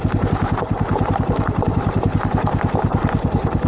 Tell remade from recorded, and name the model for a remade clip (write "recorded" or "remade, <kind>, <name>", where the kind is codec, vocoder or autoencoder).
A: remade, vocoder, BigVGAN v2